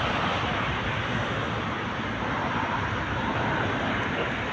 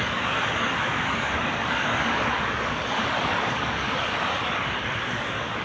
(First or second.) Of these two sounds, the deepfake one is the second